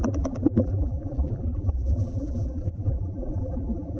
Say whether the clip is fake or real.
fake